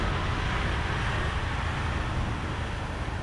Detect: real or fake real